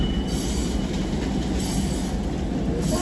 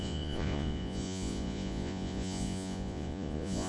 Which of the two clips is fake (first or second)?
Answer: second